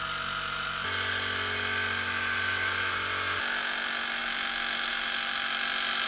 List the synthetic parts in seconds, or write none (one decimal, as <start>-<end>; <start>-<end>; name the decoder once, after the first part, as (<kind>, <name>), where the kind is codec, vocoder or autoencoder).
none